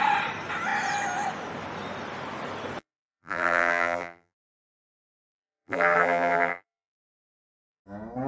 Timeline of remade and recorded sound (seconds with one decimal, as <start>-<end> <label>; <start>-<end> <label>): 0.0-2.8 recorded; 2.8-7.8 remade; 7.8-8.3 recorded